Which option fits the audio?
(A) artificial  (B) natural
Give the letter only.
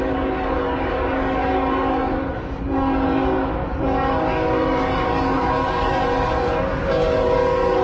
A